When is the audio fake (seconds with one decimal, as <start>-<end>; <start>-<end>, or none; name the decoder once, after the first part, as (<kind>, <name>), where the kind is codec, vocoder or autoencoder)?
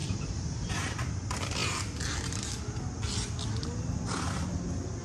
0.0-1.0 (vocoder, BigVGAN v2)